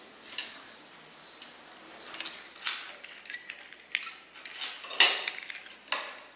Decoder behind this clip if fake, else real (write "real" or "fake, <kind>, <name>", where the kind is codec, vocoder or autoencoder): real